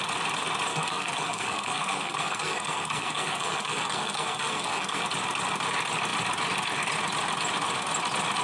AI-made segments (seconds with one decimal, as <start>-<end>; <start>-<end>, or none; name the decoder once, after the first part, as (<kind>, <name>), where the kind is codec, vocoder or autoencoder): 0.7-5.0 (codec, SNAC)